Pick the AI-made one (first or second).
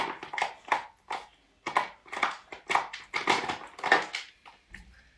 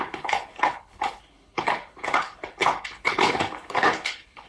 second